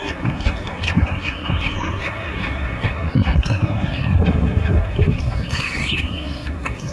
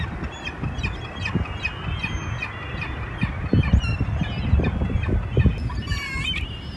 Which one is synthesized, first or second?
first